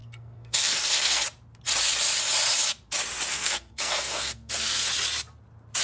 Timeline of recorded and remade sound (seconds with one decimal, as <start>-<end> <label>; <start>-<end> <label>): 0.0-1.2 remade; 1.2-3.3 recorded; 3.3-4.9 remade; 4.9-5.8 recorded